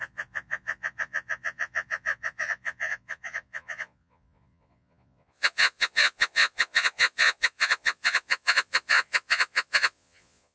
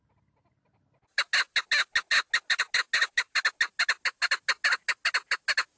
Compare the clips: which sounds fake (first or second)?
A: first